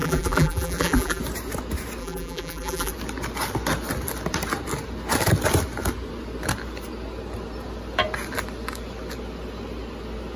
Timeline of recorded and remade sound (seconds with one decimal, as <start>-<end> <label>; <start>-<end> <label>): 0.0-1.2 remade; 1.2-2.0 recorded; 2.0-2.9 remade; 2.9-10.4 recorded